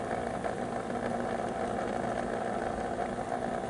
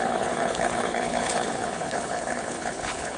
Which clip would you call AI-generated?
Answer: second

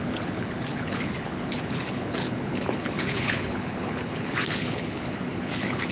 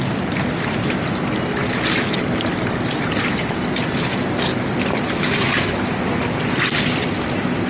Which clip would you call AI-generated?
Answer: first